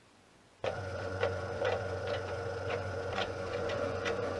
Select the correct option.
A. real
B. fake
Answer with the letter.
B